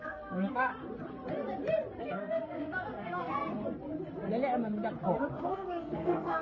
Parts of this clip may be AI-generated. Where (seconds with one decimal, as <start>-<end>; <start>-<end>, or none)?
0.0-0.7; 2.0-3.4; 5.4-6.4